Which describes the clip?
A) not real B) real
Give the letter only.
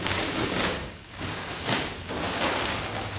A